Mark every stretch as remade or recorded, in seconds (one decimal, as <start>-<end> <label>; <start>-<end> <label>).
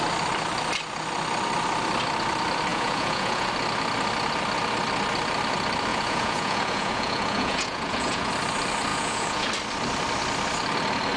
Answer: 0.0-2.7 recorded; 2.7-3.5 remade; 3.5-5.9 recorded; 5.9-8.3 remade; 8.3-8.9 recorded; 8.9-9.5 remade; 9.5-11.2 recorded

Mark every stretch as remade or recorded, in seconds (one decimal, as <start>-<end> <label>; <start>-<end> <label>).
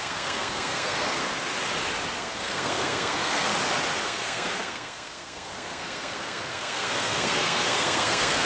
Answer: 0.0-1.2 remade; 1.2-2.2 recorded; 2.2-3.5 remade; 3.5-4.0 recorded; 4.0-8.5 remade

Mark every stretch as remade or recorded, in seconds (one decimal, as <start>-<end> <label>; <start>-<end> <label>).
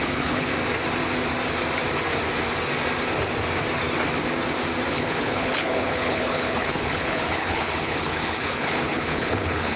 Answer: 0.0-0.5 remade; 0.5-4.9 recorded; 4.9-9.8 remade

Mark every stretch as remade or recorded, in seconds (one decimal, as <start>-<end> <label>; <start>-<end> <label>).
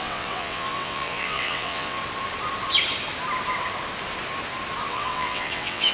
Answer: 0.0-2.0 remade; 2.0-4.9 recorded; 4.9-5.9 remade